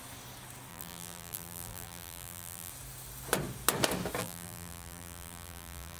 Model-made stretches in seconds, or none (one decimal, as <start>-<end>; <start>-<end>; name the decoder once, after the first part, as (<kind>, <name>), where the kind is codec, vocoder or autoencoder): 0.7-2.7 (vocoder, BigVGAN v2); 4.2-6.0